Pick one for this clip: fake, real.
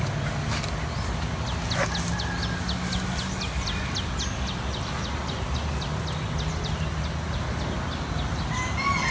real